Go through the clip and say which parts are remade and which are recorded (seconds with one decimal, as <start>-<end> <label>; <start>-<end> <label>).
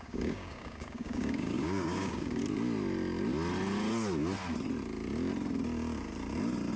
0.0-2.4 remade; 2.4-6.8 recorded